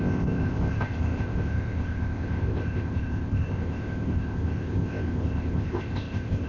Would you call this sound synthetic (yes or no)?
yes